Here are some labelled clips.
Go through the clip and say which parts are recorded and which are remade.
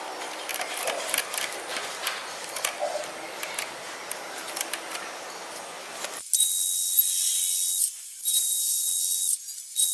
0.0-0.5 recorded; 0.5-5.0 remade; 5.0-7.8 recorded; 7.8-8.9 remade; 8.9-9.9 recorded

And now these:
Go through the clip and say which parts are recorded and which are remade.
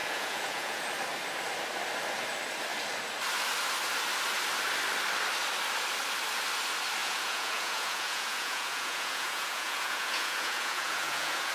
0.0-0.8 remade; 0.8-7.0 recorded; 7.0-11.5 remade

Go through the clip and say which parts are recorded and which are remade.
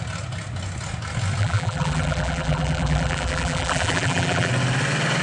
0.0-1.4 recorded; 1.4-4.5 remade; 4.5-5.2 recorded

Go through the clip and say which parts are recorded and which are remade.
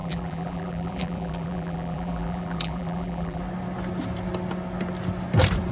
0.0-3.4 remade; 3.4-5.7 recorded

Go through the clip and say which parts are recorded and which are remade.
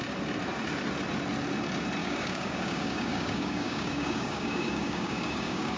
0.0-2.0 recorded; 2.0-5.8 remade